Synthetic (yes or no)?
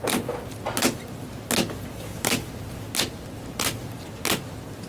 no